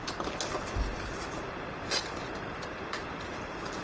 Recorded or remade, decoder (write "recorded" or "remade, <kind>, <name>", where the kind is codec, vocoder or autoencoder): recorded